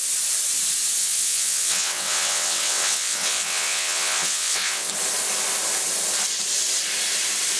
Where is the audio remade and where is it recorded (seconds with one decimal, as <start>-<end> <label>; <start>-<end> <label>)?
0.0-1.0 recorded; 1.0-4.9 remade; 4.9-7.6 recorded